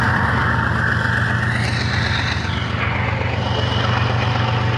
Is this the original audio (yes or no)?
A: yes